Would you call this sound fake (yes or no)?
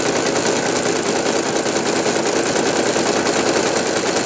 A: no